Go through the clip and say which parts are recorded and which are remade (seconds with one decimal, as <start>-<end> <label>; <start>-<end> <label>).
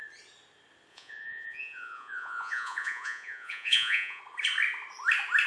0.0-0.9 recorded; 0.9-4.2 remade; 4.2-5.5 recorded